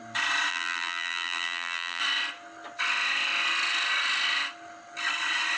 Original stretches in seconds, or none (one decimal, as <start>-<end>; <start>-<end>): 0.0-0.5; 2.0-5.6